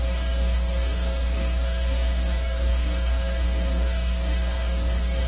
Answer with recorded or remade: remade